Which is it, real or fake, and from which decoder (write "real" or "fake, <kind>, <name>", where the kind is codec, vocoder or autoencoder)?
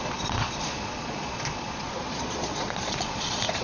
fake, vocoder, Vocos